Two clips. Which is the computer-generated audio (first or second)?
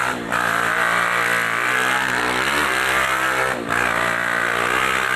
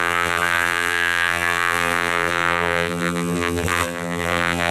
second